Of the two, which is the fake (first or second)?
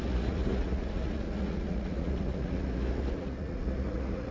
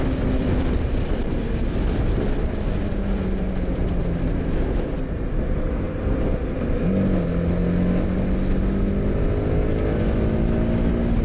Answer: first